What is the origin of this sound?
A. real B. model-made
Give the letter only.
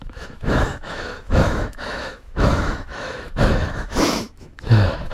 B